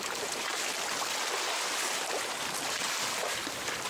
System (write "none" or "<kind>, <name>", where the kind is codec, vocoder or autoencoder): none